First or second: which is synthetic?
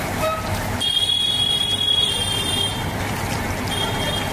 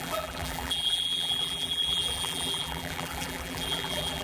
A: second